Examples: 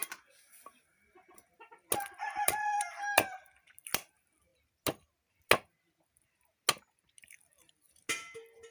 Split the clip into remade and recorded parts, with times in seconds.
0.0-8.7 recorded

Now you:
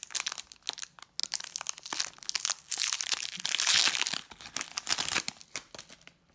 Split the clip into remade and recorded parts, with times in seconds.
0.0-6.3 recorded